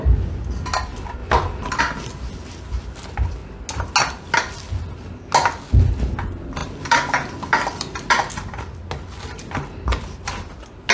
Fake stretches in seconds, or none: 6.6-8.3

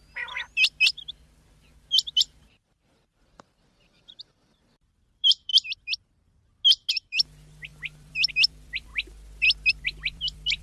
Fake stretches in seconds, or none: 0.0-5.5; 6.9-8.9; 9.7-10.6